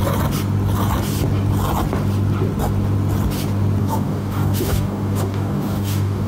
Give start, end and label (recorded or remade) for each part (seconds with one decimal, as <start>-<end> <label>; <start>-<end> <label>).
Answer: 0.0-3.8 recorded; 3.8-6.3 remade